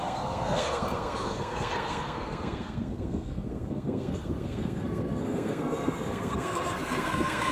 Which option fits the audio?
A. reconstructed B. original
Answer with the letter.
A